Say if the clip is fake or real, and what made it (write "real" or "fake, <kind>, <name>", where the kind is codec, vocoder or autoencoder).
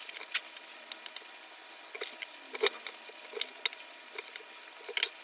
real